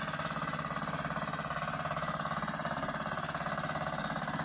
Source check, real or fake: real